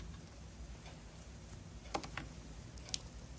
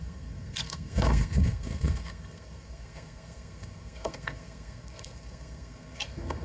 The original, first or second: first